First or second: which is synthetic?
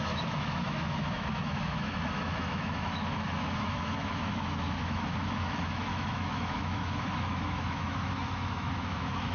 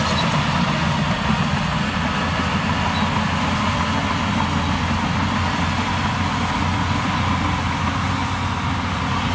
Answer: first